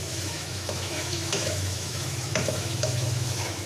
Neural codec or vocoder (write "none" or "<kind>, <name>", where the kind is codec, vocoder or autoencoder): autoencoder, DAC-VAE